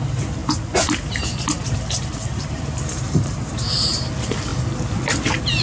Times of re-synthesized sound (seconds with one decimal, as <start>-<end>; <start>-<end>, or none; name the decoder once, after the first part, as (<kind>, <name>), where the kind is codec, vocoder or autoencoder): 2.3-4.0 (vocoder, BigVGAN v2)